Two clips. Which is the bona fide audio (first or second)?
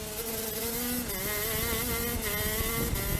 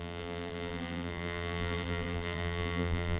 first